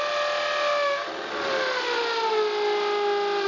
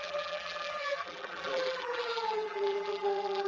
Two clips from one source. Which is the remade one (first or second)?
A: second